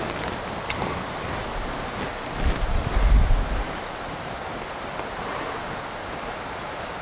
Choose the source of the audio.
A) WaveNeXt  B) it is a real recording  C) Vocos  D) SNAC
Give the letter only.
B